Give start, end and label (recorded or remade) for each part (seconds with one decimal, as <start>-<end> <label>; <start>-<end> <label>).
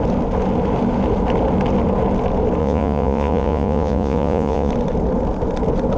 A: 0.0-2.6 recorded; 2.6-4.7 remade; 4.7-6.0 recorded